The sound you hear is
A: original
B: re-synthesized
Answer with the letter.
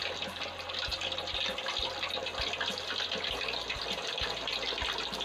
A